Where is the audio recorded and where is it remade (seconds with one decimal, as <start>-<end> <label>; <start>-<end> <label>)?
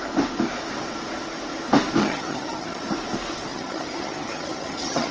0.0-2.0 recorded; 2.0-2.8 remade; 2.8-3.5 recorded; 3.5-5.1 remade